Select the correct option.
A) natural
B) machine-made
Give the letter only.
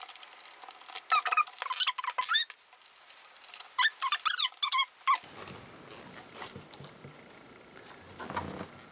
A